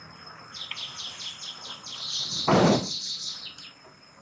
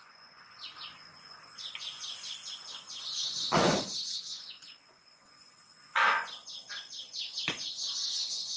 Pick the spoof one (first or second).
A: second